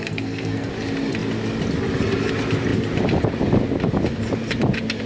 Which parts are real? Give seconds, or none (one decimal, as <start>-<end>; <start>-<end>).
0.7-5.1